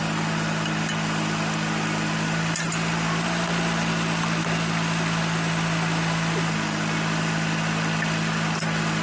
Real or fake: real